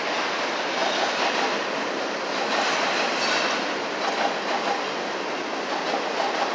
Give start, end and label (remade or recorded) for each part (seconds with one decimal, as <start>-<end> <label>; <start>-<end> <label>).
0.0-6.5 recorded